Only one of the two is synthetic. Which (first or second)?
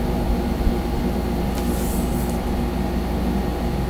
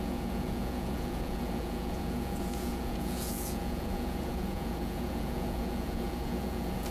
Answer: second